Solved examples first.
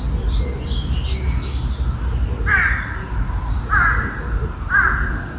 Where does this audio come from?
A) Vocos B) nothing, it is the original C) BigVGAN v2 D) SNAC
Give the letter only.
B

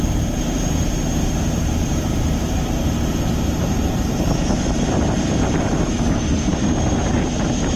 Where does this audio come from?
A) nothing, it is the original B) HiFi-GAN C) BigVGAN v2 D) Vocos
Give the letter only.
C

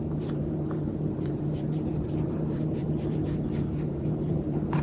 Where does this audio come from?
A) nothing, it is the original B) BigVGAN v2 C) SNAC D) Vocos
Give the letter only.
B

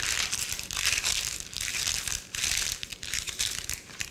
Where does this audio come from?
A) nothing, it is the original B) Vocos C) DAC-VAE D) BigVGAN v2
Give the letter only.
A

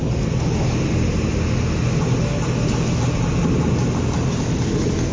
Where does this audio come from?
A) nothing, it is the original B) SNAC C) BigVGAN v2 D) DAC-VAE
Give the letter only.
A